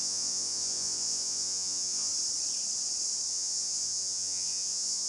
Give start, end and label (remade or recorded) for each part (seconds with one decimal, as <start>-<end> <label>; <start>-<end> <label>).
0.0-2.1 remade; 2.1-3.3 recorded; 3.3-5.1 remade